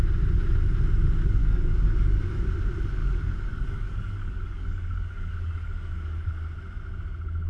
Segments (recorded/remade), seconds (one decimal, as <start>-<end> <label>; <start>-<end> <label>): 0.0-1.4 recorded; 1.4-2.4 remade; 2.4-3.0 recorded; 3.0-6.3 remade; 6.3-7.5 recorded